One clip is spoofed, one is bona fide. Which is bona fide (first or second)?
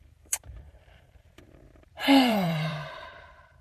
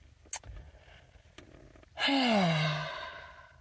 second